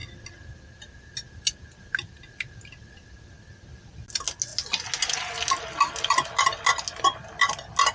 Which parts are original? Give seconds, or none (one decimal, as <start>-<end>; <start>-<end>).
0.0-7.9